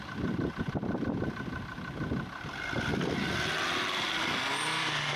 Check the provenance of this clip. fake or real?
real